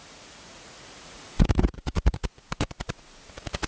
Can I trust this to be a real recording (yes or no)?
no